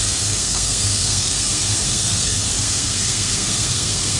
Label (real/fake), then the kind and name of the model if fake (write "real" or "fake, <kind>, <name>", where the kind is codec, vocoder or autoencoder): fake, codec, SNAC